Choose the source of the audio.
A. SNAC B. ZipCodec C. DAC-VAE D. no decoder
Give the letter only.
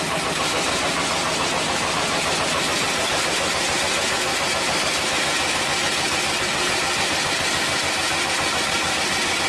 D